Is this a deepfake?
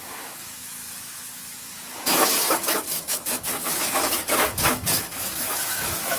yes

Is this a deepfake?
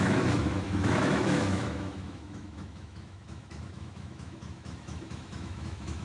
yes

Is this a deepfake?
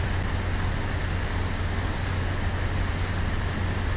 no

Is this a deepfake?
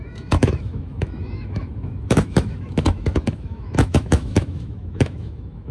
yes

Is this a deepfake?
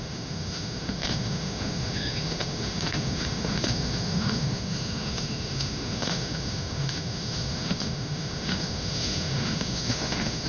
yes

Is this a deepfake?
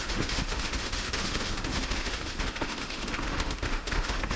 yes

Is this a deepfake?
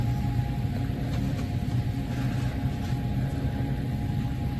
no